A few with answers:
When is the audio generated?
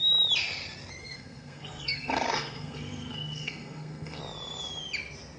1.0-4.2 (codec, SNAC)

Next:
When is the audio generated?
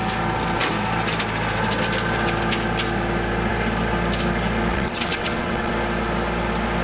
4.7-5.7 (vocoder, WaveNeXt)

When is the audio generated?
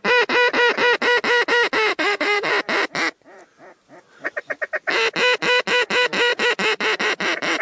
1.9-2.5 (autoencoder, DAC-VAE)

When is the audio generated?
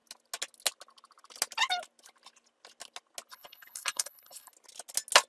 3.3-4.5 (codec, HILCodec)